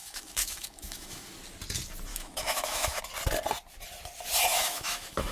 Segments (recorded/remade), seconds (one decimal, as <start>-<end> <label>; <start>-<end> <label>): 0.0-1.3 remade; 1.3-2.1 recorded; 2.1-3.0 remade; 3.0-4.5 recorded; 4.5-5.3 remade